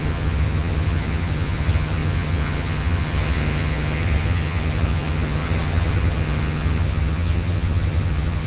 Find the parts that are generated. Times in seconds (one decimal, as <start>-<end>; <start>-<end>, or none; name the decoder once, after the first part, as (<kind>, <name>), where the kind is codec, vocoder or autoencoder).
0.0-8.5 (vocoder, HiFi-GAN)